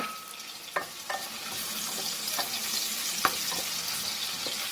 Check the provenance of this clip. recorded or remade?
recorded